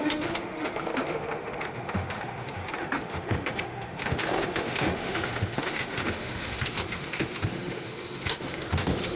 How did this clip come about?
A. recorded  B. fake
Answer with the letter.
B